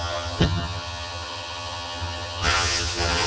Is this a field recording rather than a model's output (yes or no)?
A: no